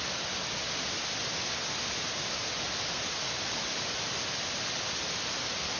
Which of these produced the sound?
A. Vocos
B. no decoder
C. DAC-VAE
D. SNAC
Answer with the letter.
B